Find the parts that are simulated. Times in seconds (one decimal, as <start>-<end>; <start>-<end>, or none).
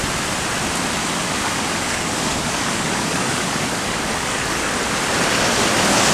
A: 1.0-4.7